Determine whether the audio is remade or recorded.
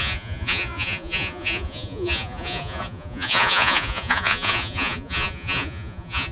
remade